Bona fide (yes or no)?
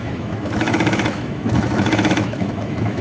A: no